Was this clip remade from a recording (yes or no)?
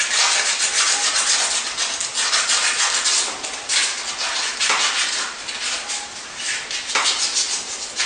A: no